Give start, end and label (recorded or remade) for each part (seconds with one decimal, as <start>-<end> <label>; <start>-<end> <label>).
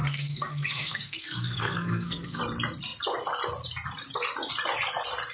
0.0-2.4 remade; 2.4-5.3 recorded